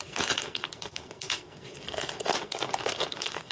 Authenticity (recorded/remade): remade